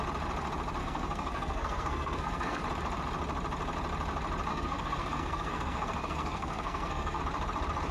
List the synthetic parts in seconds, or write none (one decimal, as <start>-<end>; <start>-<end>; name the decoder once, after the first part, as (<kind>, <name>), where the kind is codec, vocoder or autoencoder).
0.8-2.6 (codec, SNAC); 4.5-7.2